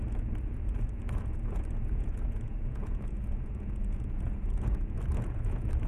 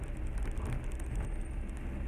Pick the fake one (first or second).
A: first